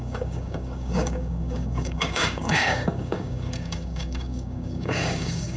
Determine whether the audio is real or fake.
fake